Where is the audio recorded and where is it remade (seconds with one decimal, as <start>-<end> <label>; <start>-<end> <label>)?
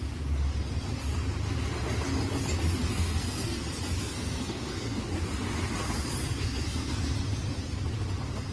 0.0-2.9 recorded; 2.9-3.6 remade; 3.6-4.0 recorded; 4.0-5.0 remade; 5.0-6.4 recorded; 6.4-7.0 remade; 7.0-8.5 recorded